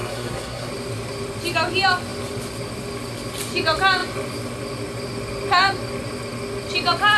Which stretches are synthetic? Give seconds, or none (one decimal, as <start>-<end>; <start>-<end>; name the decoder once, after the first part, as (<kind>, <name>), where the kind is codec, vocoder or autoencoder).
0.0-0.7 (codec, SNAC)